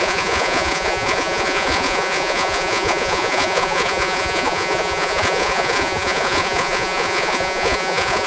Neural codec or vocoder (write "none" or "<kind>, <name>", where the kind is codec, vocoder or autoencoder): vocoder, Vocos